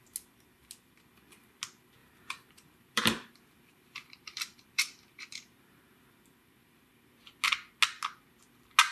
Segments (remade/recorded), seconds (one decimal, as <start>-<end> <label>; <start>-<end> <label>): 0.0-2.0 recorded; 2.0-7.2 remade; 7.2-8.9 recorded